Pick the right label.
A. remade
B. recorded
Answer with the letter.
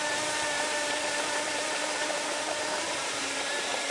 A